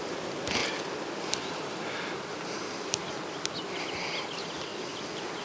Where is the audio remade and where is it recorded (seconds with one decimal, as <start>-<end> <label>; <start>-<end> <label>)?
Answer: 0.0-5.4 recorded